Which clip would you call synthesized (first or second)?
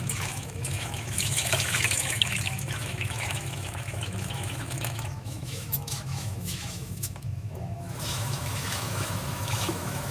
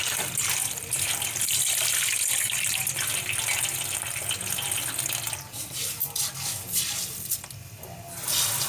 first